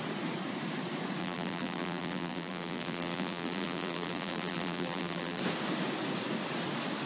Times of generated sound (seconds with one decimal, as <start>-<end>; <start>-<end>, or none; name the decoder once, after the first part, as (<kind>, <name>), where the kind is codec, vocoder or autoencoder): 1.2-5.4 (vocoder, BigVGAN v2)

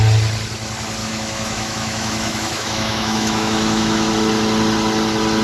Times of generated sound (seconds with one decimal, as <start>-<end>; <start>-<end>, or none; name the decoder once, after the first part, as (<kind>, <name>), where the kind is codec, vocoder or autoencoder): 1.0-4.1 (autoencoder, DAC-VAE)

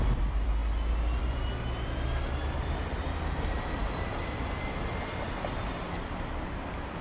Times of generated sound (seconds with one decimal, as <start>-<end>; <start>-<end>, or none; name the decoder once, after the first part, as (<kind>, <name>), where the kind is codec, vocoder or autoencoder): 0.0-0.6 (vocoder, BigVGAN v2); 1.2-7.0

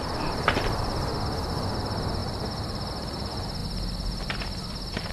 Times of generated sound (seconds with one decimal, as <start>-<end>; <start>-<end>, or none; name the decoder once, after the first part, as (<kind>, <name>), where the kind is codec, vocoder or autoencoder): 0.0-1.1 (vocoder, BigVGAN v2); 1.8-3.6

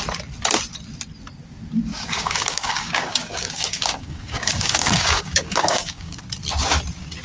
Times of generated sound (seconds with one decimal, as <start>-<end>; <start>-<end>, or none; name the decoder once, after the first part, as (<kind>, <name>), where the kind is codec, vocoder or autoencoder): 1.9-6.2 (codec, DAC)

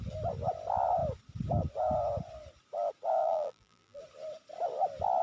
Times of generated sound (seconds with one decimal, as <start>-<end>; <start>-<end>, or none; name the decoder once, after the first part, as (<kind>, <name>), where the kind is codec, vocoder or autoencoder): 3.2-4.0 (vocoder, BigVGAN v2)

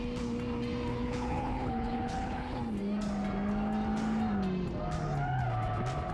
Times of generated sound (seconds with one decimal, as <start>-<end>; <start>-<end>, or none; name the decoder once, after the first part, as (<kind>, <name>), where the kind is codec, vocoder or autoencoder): 0.9-2.6 (codec, HILCodec)